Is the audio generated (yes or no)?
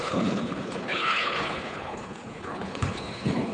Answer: yes